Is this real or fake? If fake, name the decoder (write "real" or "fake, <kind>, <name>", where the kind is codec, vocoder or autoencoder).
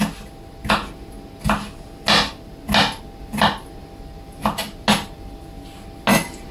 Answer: real